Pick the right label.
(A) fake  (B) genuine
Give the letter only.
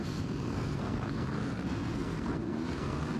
A